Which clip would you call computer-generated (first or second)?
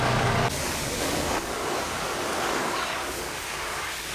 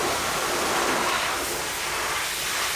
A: first